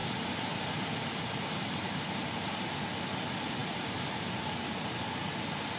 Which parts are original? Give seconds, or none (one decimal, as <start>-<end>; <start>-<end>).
0.0-5.8